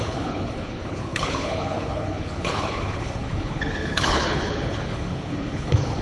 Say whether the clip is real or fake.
fake